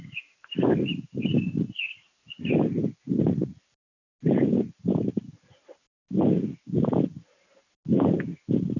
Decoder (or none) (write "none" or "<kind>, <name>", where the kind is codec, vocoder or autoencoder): none